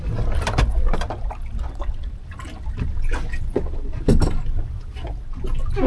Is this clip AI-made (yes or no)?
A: no